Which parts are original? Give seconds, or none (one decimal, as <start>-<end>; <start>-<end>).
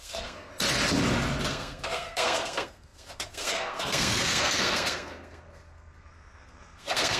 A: 0.5-1.5